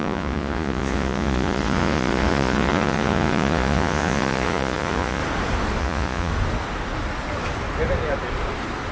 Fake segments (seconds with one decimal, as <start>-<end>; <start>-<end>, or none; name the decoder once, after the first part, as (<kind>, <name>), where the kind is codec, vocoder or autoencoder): 0.0-5.2 (vocoder, Vocos); 5.8-6.3